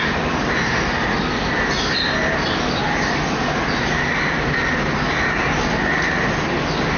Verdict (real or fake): real